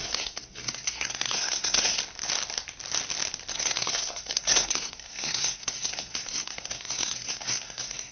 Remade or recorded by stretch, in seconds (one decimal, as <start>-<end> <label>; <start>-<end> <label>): 0.0-2.0 remade; 2.0-3.5 recorded; 3.5-8.1 remade

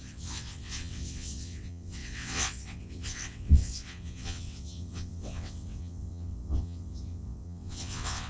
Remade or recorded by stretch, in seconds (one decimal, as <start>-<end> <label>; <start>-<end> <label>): 0.0-8.3 remade

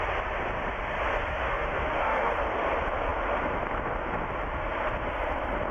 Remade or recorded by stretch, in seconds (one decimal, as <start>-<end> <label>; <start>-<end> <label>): 0.0-1.3 recorded; 1.3-2.3 remade; 2.3-5.7 recorded

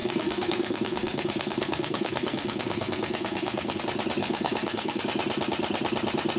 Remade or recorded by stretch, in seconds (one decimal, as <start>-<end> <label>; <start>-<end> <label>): 0.0-3.8 remade; 3.8-4.2 recorded; 4.2-5.0 remade; 5.0-6.4 recorded

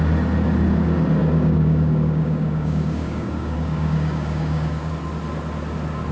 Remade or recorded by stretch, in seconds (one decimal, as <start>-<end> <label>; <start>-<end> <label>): 0.0-1.2 recorded; 1.2-4.9 remade; 4.9-6.1 recorded

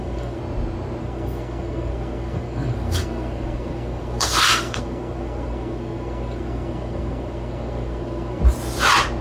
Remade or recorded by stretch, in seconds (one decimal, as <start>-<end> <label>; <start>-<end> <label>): 0.0-0.4 remade; 0.4-1.0 recorded; 1.0-8.4 remade; 8.4-9.2 recorded

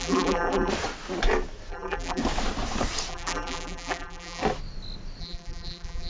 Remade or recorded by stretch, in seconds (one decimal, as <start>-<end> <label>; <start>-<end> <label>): 0.0-0.7 remade; 0.7-1.7 recorded; 1.7-2.2 remade; 2.2-3.1 recorded; 3.1-4.4 remade; 4.4-5.2 recorded; 5.2-6.1 remade

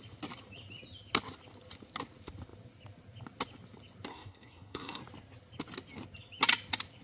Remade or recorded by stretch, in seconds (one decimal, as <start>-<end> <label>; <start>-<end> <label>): 0.0-4.1 recorded; 4.1-5.0 remade; 5.0-7.0 recorded